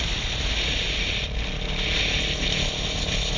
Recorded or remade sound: recorded